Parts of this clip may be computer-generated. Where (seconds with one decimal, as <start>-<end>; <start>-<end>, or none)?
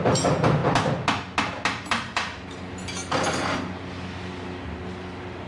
none